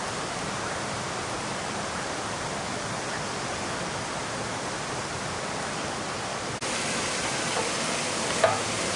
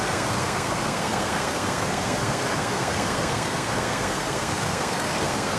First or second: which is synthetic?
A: second